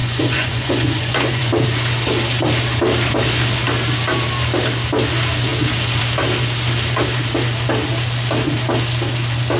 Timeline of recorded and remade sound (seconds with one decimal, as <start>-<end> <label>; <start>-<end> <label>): 0.0-1.5 remade; 1.5-9.6 recorded